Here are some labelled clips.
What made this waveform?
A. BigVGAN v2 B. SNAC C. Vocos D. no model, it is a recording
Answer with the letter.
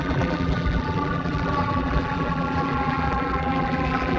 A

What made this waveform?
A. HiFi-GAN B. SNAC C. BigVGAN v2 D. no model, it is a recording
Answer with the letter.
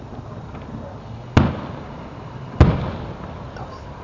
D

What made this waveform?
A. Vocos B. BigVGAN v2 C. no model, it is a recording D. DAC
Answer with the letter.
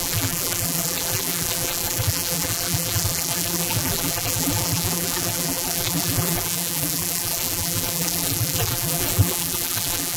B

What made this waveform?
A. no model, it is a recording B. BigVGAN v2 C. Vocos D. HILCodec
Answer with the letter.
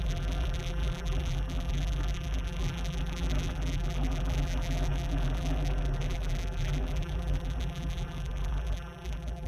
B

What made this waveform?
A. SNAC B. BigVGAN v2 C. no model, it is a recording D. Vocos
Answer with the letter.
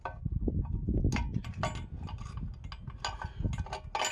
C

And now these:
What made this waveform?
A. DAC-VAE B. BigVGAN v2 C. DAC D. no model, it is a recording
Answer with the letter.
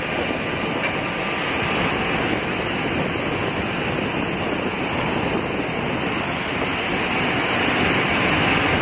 D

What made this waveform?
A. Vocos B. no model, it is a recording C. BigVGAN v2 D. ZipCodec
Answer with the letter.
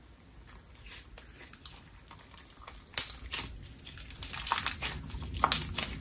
B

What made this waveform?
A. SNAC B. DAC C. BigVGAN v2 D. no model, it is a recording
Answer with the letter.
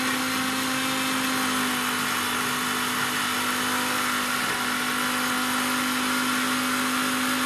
D